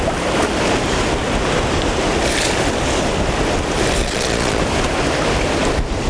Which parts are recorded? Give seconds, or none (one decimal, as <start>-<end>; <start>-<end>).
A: 0.0-4.0; 4.6-6.1